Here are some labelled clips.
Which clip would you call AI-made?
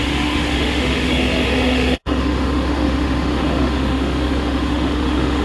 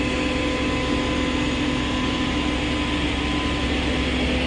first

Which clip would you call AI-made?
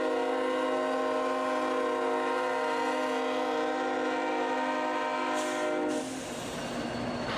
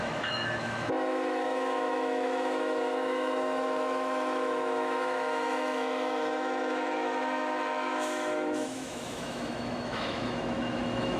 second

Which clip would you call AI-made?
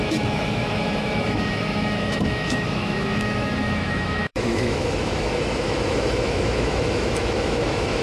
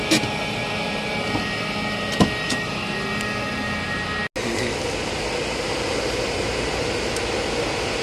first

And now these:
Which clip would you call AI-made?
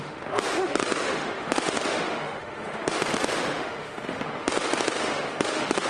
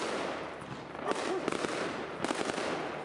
first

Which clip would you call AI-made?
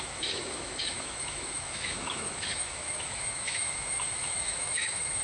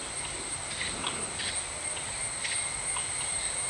first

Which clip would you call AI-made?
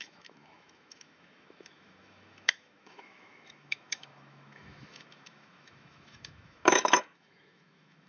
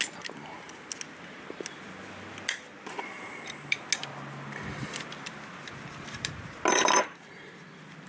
first